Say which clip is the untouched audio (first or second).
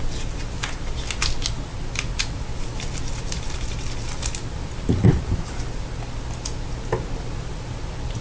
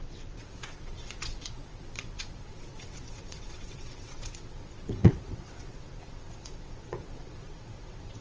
first